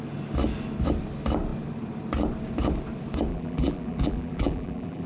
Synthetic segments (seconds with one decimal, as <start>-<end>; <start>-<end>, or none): 3.3-5.1